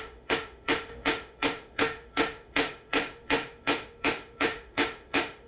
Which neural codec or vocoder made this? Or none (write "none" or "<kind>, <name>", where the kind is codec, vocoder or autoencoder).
autoencoder, DAC-VAE